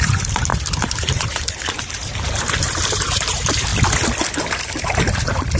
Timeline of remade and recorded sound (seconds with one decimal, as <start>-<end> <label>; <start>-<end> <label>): 0.0-3.7 remade; 3.7-4.4 recorded; 4.4-5.6 remade